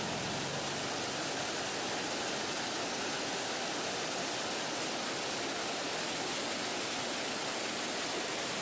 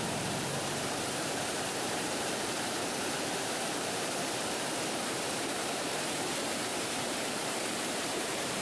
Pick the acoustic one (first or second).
first